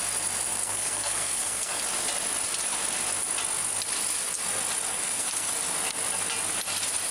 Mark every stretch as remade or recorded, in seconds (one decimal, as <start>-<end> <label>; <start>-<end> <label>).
0.0-0.5 recorded; 0.5-1.8 remade; 1.8-4.9 recorded; 4.9-5.5 remade; 5.5-7.1 recorded